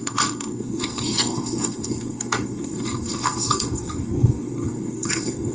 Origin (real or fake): fake